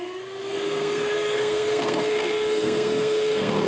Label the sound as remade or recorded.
remade